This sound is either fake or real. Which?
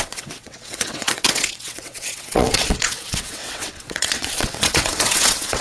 fake